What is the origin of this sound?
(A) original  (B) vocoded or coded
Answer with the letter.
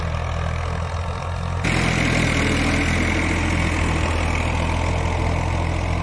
A